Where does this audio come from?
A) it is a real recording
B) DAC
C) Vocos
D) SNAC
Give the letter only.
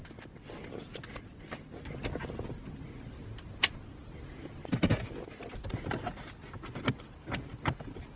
A